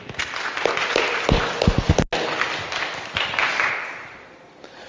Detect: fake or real real